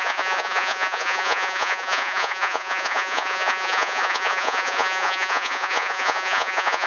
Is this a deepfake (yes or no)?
yes